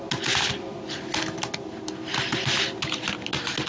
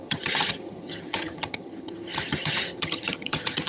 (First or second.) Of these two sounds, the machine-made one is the second